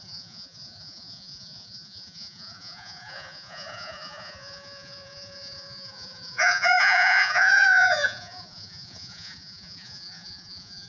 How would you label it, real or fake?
fake